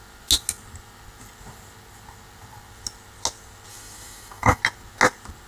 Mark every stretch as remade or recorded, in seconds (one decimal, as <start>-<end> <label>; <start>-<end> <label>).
0.0-3.7 recorded; 3.7-4.6 remade; 4.6-5.5 recorded

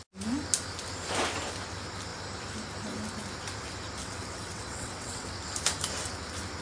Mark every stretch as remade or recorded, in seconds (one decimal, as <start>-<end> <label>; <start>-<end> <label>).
0.0-4.0 recorded; 4.0-5.4 remade; 5.4-6.6 recorded